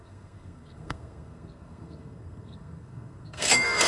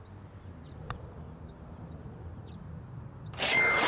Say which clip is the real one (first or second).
second